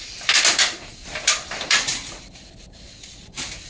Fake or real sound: fake